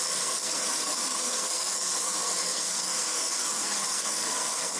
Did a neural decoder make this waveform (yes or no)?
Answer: yes